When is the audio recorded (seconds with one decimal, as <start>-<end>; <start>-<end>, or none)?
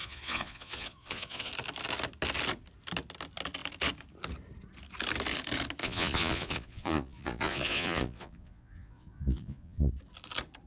1.5-5.8; 9.9-10.7